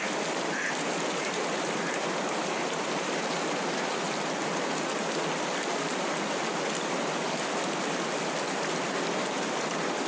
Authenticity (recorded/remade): recorded